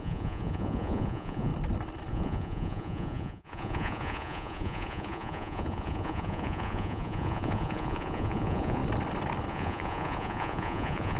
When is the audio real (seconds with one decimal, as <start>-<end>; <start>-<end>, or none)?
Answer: 1.5-2.1; 8.8-9.5